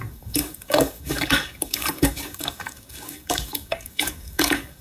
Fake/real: fake